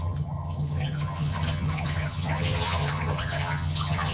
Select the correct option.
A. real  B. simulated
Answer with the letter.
B